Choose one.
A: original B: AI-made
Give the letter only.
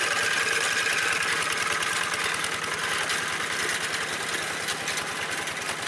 A